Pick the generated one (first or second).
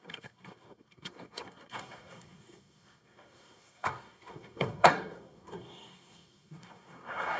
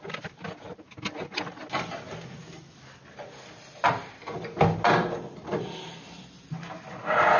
first